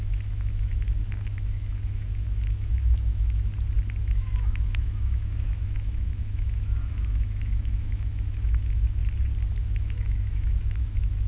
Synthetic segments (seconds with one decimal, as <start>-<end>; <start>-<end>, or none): 0.0-3.5; 4.0-9.0; 9.6-11.3